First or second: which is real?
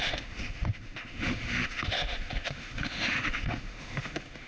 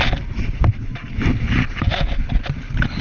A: second